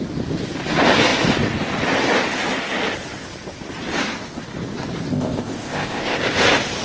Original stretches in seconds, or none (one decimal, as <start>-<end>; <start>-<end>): 0.0-5.1; 6.2-6.8